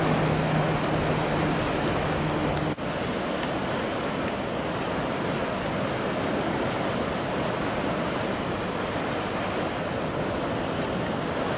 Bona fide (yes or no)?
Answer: yes